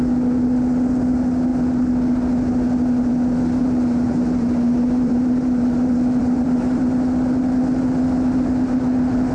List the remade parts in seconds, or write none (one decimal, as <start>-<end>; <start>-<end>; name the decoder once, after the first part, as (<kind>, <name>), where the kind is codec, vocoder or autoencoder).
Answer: 3.6-6.8 (vocoder, BigVGAN v2)